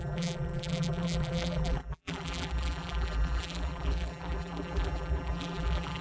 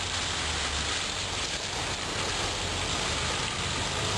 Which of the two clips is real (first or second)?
second